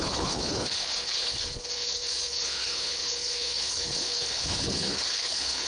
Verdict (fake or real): fake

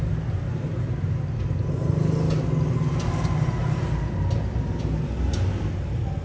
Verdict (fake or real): real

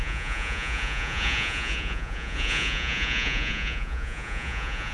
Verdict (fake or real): fake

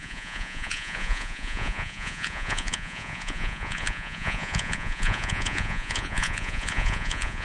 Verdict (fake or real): fake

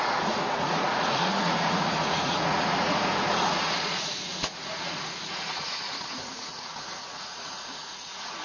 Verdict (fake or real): fake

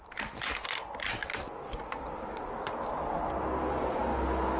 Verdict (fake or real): real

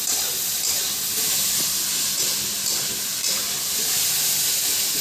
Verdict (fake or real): real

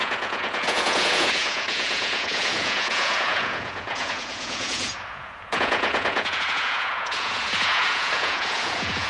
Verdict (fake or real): fake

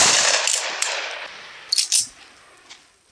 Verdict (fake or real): real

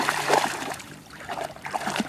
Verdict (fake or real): fake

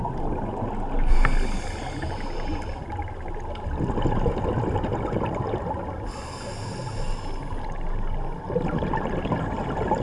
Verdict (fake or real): real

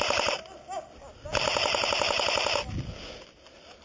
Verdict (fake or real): real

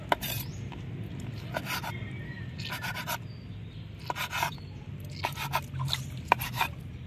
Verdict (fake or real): real